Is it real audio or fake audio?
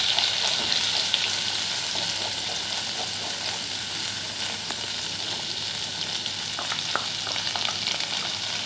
real